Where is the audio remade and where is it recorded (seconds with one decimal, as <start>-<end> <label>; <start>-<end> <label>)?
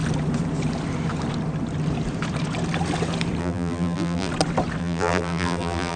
0.0-3.4 recorded; 3.4-4.3 remade; 4.3-4.8 recorded; 4.8-6.0 remade